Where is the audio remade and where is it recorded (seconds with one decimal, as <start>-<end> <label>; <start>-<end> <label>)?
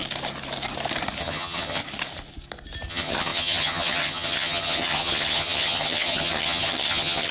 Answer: 0.0-1.2 recorded; 1.2-1.8 remade; 1.8-2.9 recorded; 2.9-7.3 remade